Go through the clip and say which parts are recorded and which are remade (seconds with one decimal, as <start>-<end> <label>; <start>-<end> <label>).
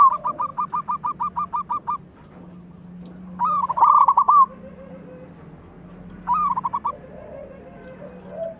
0.0-8.6 recorded